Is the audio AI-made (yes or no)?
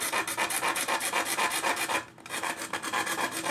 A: no